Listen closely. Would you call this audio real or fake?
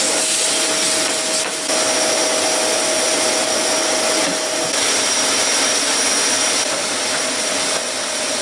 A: real